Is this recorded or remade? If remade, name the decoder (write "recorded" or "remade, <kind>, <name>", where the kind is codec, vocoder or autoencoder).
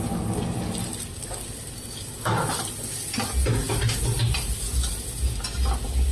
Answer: recorded